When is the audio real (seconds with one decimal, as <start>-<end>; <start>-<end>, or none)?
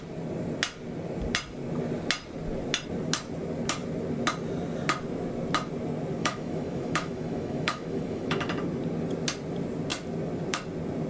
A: 0.0-6.2; 8.4-11.1